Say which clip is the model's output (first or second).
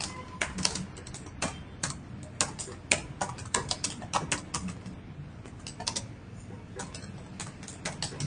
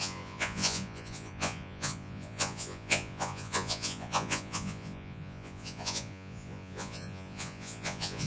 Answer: second